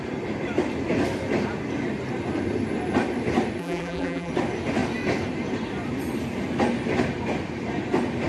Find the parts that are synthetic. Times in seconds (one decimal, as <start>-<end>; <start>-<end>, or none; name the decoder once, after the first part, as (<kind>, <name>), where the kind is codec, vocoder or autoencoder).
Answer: 3.6-4.3 (vocoder, BigVGAN v2)